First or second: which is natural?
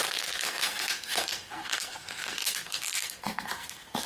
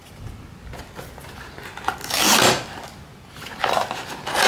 second